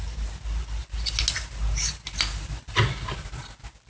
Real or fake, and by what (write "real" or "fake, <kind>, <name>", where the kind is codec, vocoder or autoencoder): real